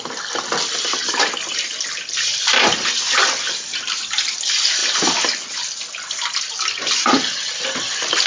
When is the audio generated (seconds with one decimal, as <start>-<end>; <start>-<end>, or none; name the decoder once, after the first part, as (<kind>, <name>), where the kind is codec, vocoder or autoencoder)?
none